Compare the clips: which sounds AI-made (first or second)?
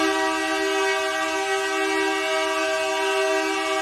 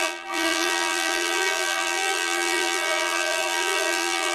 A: second